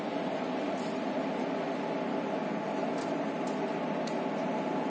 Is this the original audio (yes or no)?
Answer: yes